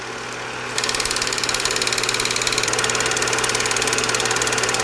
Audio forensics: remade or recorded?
recorded